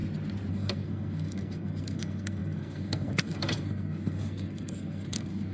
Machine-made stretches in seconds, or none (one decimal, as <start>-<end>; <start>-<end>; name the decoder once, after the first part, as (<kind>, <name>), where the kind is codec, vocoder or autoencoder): 0.5-5.5 (codec, SNAC)